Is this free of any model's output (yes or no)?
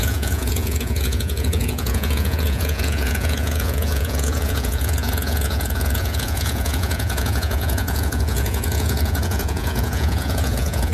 no